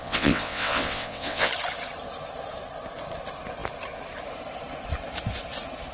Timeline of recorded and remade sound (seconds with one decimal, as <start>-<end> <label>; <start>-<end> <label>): 0.0-1.5 remade; 1.5-5.9 recorded